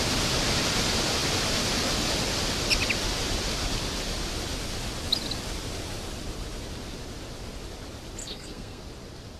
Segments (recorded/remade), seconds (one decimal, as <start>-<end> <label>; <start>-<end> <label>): 0.0-8.2 recorded; 8.2-8.8 remade; 8.8-9.4 recorded